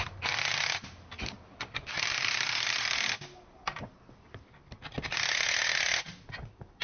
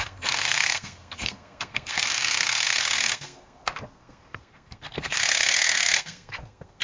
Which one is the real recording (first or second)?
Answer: first